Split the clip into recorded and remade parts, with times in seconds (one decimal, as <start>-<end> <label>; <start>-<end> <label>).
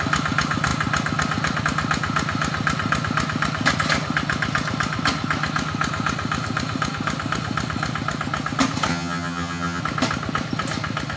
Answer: 0.0-8.9 recorded; 8.9-9.8 remade; 9.8-11.2 recorded